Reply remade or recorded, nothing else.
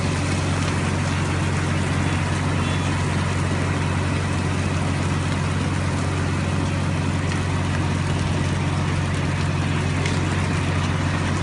recorded